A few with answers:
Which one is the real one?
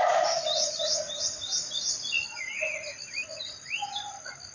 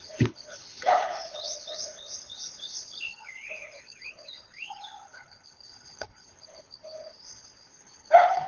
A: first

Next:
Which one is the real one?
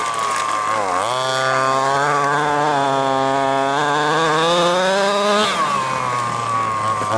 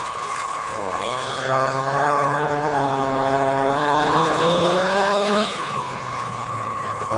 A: first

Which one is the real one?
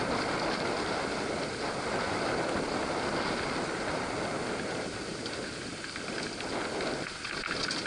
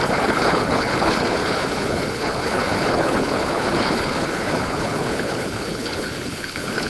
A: first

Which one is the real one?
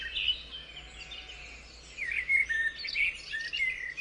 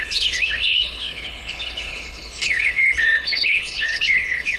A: first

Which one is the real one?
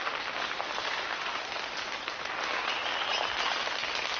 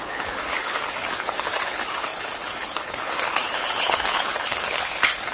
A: first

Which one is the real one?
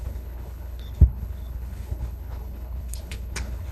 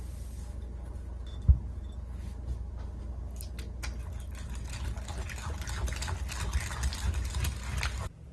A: second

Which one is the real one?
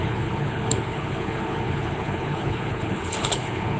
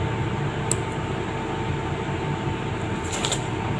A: second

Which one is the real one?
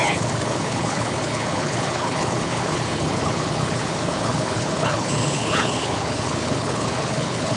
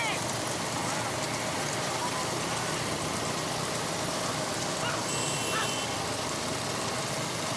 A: second